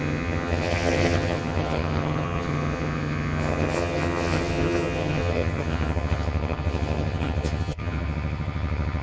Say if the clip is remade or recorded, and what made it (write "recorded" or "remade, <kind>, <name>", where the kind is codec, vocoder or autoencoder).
remade, vocoder, HiFi-GAN